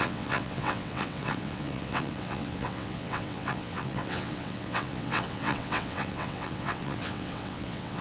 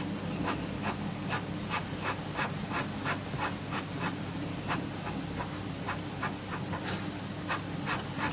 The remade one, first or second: first